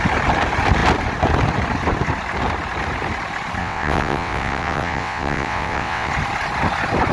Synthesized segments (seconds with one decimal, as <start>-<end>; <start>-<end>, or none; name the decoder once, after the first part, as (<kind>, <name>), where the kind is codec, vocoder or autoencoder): 3.6-6.1 (vocoder, WaveNeXt)